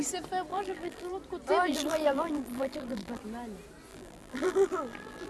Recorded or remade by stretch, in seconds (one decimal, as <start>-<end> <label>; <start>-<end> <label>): 0.0-0.5 recorded; 0.5-1.1 remade; 1.1-1.7 recorded; 1.7-3.2 remade; 3.2-3.9 recorded; 3.9-5.3 remade